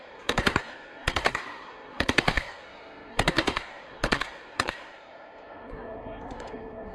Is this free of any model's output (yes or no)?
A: no